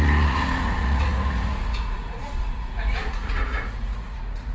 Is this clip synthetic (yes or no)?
yes